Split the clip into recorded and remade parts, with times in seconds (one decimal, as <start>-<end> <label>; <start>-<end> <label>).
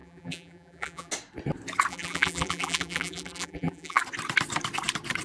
0.0-1.1 remade; 1.1-1.9 recorded; 1.9-4.0 remade; 4.0-5.2 recorded